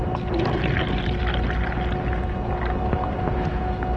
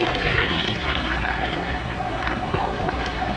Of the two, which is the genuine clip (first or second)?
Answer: first